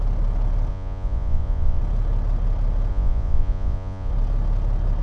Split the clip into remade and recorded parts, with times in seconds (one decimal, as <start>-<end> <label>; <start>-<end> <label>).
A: 0.0-0.7 recorded; 0.7-1.8 remade; 1.8-2.9 recorded; 2.9-4.1 remade; 4.1-5.0 recorded